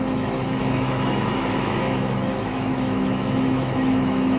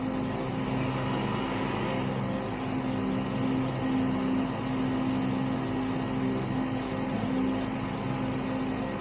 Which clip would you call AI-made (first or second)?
first